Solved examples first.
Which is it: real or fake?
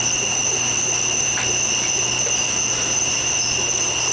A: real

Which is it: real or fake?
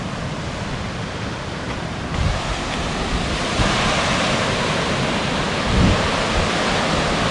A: real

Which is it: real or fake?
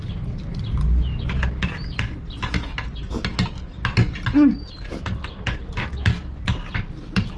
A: real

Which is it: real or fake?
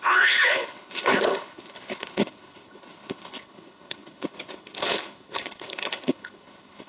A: fake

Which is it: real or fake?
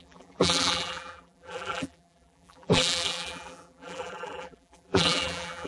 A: fake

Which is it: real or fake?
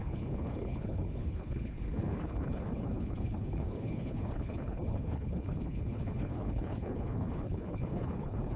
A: fake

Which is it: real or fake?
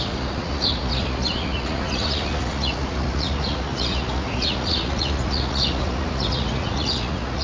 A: fake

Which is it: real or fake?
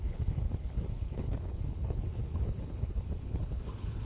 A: fake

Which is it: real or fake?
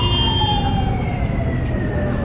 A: real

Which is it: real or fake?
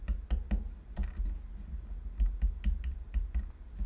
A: real